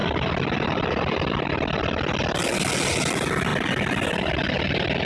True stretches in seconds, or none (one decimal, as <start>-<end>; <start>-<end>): 0.0-5.1